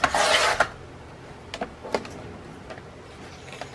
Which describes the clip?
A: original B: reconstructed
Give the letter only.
A